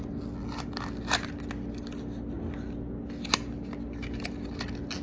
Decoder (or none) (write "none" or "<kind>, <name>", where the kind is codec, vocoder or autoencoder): none